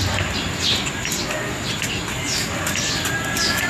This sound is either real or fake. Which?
real